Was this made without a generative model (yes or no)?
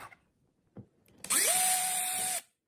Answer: no